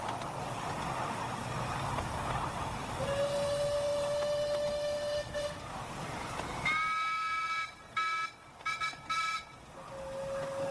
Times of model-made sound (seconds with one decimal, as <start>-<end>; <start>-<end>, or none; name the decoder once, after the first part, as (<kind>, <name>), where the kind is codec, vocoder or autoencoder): none